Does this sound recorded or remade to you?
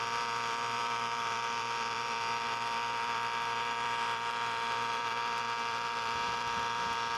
remade